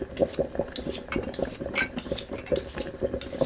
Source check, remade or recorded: recorded